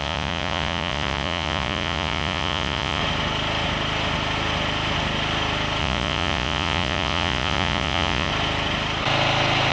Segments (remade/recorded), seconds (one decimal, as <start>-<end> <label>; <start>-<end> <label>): 0.0-3.0 remade; 3.0-5.8 recorded; 5.8-8.3 remade; 8.3-9.7 recorded